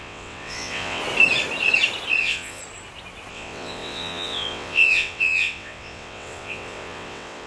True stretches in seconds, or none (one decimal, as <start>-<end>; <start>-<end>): 1.0-2.2; 2.6-3.3